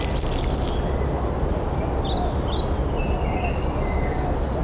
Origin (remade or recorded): recorded